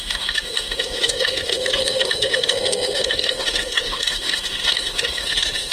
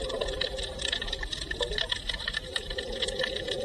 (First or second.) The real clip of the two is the second